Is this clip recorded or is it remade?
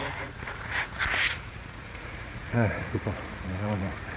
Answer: remade